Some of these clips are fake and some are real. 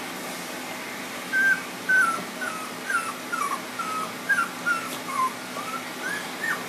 real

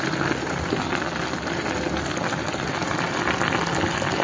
real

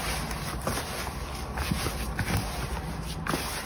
real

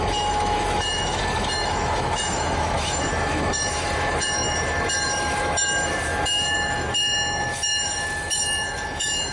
fake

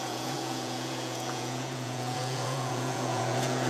fake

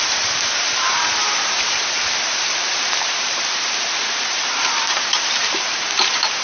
fake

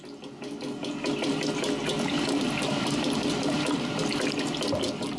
fake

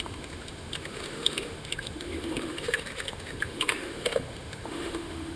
fake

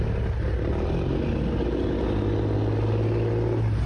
real